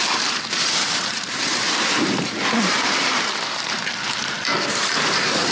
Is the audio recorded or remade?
remade